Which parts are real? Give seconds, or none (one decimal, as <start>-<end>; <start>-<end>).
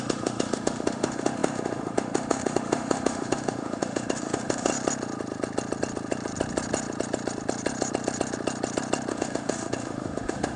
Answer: 4.7-9.1